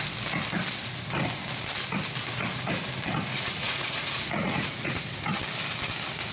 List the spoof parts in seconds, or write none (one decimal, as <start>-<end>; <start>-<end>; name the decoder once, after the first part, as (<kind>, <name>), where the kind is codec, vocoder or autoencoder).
3.3-5.0 (vocoder, Vocos)